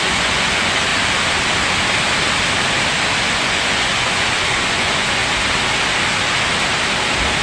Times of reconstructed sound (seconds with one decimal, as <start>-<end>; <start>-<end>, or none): 0.0-0.9; 3.2-5.2